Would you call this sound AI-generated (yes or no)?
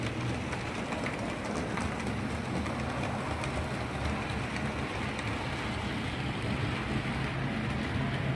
no